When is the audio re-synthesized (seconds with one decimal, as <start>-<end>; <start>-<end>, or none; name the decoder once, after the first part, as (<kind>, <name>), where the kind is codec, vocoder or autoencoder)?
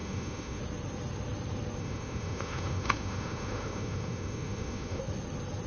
0.0-0.6 (autoencoder, DAC-VAE); 1.8-5.0